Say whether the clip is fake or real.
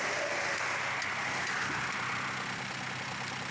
real